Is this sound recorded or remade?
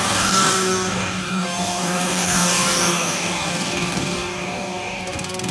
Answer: remade